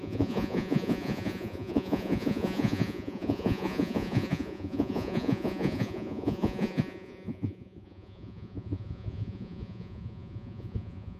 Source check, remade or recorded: remade